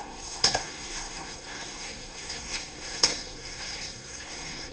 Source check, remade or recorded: remade